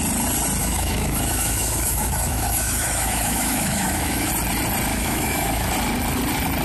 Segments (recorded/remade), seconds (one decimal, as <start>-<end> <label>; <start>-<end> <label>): 0.0-0.6 recorded; 0.6-4.3 remade; 4.3-4.9 recorded; 4.9-5.7 remade; 5.7-6.6 recorded